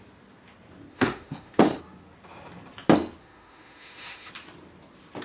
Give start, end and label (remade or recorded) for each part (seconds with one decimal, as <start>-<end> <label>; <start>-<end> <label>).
0.0-0.9 recorded; 0.9-1.8 remade; 1.8-3.2 recorded; 3.2-4.3 remade; 4.3-5.2 recorded